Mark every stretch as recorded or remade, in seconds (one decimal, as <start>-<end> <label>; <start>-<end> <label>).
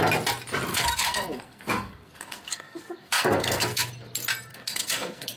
0.0-0.7 recorded; 0.7-3.9 remade; 3.9-4.5 recorded; 4.5-5.4 remade